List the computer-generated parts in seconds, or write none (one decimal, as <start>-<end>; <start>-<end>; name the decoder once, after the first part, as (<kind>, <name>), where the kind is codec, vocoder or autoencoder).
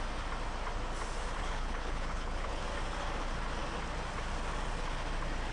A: 1.4-2.6 (codec, HILCodec)